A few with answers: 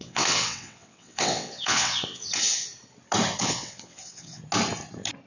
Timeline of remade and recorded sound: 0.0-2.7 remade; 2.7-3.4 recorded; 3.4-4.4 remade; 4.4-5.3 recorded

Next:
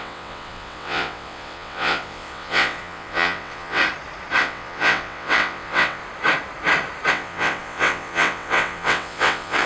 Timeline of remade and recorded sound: 0.0-3.8 remade; 3.8-4.4 recorded; 4.4-6.0 remade; 6.0-7.1 recorded; 7.1-9.7 remade

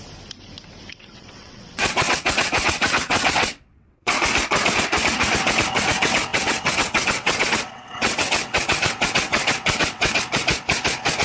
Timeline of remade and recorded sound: 0.0-0.9 recorded; 0.9-4.1 remade; 4.1-6.3 recorded; 6.3-10.2 remade; 10.2-11.2 recorded